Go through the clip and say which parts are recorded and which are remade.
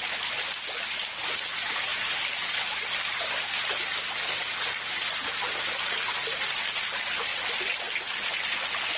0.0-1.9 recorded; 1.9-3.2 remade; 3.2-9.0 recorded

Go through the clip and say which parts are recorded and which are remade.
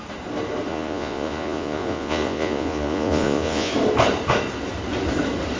0.0-0.7 recorded; 0.7-3.7 remade; 3.7-5.6 recorded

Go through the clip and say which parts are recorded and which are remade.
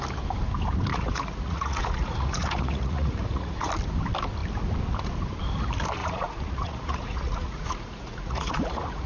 0.0-0.9 recorded; 0.9-3.7 remade; 3.7-6.0 recorded; 6.0-9.1 remade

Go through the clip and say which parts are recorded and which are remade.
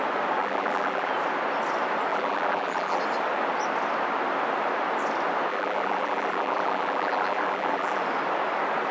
0.0-0.4 recorded; 0.4-1.1 remade; 1.1-2.1 recorded; 2.1-3.0 remade; 3.0-5.5 recorded; 5.5-8.0 remade; 8.0-8.9 recorded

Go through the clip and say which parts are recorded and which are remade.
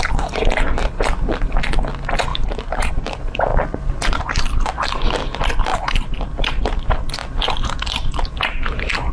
0.0-2.3 recorded; 2.3-2.9 remade; 2.9-5.7 recorded; 5.7-6.6 remade; 6.6-9.1 recorded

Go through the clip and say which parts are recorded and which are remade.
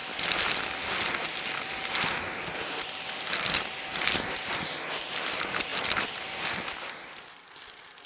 0.0-8.1 recorded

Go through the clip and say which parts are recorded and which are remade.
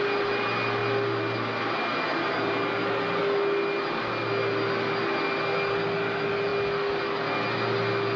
0.0-8.2 recorded